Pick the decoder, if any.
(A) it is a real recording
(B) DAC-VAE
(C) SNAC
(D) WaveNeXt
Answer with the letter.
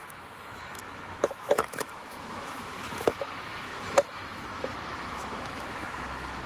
B